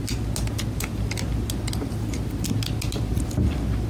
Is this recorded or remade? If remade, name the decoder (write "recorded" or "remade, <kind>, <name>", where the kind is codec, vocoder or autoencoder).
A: recorded